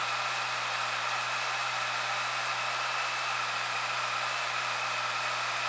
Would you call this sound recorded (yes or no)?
yes